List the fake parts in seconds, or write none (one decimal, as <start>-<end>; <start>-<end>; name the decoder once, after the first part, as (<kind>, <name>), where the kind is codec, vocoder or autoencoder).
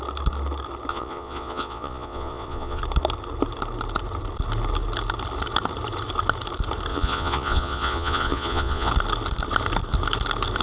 0.9-2.8 (vocoder, Vocos); 6.9-8.9